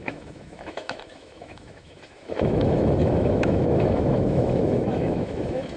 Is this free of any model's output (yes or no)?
no